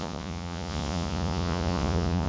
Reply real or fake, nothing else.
fake